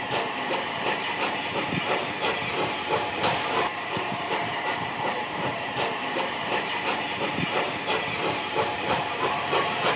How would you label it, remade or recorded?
remade